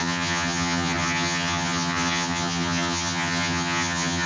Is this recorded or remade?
remade